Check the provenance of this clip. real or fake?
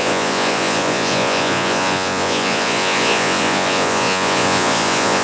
fake